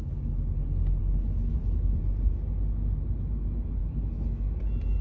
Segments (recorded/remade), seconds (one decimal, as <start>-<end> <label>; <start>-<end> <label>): 0.0-3.8 recorded; 3.8-4.6 remade; 4.6-5.0 recorded

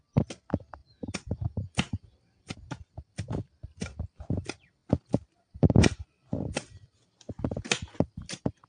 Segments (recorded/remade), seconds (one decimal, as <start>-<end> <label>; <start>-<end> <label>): 0.0-8.7 recorded

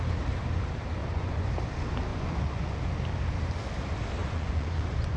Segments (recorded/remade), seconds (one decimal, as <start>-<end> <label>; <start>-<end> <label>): 0.0-1.0 recorded; 1.0-1.5 remade; 1.5-2.1 recorded; 2.1-2.8 remade; 2.8-4.2 recorded; 4.2-5.2 remade

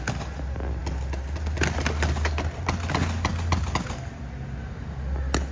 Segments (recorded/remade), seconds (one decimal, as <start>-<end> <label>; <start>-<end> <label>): 0.0-5.5 recorded

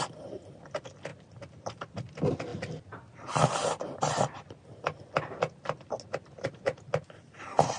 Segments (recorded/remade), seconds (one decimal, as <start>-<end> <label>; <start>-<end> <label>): 0.0-7.8 recorded

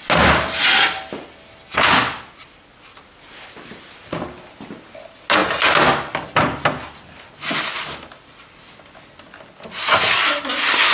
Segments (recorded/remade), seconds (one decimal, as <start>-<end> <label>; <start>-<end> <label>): 0.0-10.9 recorded